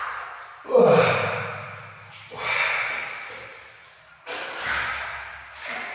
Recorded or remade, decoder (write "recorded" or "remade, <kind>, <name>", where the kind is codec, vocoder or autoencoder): recorded